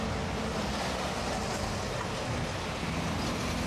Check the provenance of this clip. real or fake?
real